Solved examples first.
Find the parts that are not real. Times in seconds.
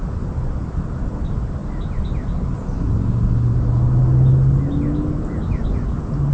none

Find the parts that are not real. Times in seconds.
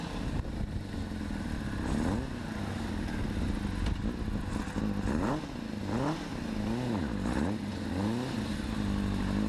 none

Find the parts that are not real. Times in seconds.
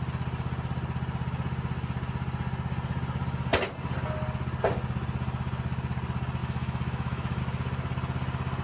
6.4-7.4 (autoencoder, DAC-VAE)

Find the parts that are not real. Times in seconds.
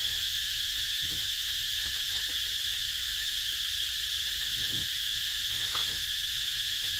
0.0-2.2 (autoencoder, DAC-VAE); 2.7-3.5; 4.4-7.0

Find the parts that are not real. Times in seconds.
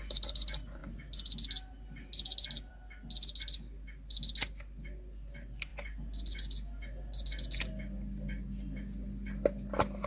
none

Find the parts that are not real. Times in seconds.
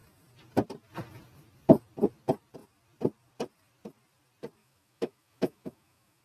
4.6-6.2 (autoencoder, DAC-VAE)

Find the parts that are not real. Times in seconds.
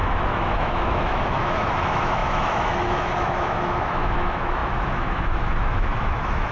0.0-6.5 (autoencoder, DAC-VAE)